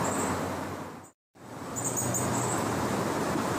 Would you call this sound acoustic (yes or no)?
yes